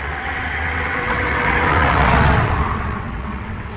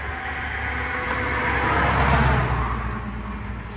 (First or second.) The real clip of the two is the second